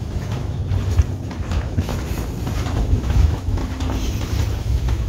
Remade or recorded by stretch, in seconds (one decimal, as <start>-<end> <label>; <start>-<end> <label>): 0.0-0.6 remade; 0.6-1.5 recorded; 1.5-1.9 remade; 1.9-2.8 recorded; 2.8-3.6 remade; 3.6-4.6 recorded; 4.6-5.1 remade